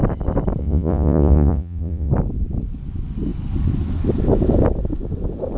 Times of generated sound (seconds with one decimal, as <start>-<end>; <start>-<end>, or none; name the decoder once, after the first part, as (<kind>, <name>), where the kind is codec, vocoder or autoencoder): 0.6-2.1 (vocoder, Vocos)